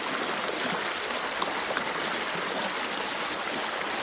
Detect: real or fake real